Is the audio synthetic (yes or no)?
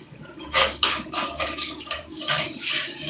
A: yes